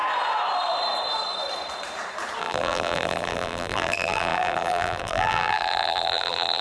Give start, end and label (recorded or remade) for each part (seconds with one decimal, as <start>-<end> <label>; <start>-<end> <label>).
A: 0.0-2.4 recorded; 2.4-6.6 remade